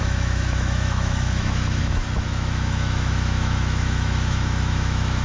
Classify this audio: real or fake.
fake